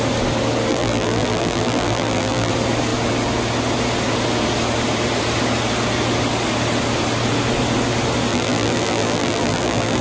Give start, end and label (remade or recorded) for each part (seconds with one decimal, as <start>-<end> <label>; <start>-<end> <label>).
0.0-0.7 recorded; 0.7-2.5 remade; 2.5-8.3 recorded; 8.3-10.0 remade